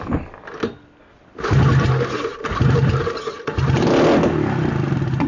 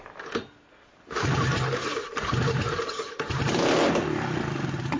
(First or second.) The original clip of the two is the first